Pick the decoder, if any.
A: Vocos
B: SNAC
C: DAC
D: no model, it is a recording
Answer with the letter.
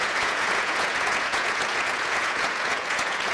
A